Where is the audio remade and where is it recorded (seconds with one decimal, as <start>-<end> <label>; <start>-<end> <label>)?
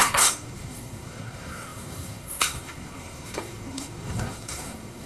0.0-5.1 remade